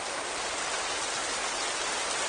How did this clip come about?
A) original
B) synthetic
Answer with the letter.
A